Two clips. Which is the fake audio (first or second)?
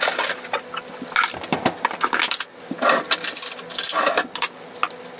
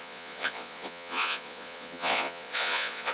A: second